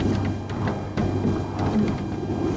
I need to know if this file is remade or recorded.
recorded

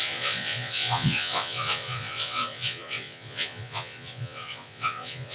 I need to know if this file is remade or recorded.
remade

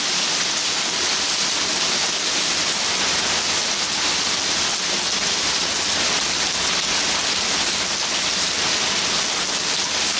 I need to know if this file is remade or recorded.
recorded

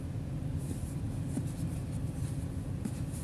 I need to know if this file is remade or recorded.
recorded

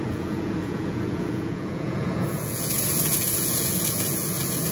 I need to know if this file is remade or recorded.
remade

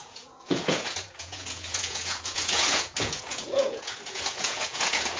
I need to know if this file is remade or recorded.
remade